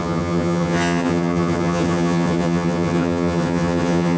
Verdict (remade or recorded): remade